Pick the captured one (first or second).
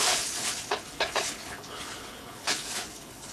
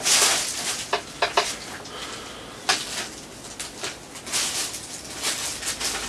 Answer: second